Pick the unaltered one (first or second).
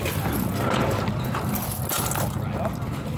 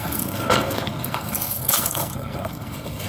first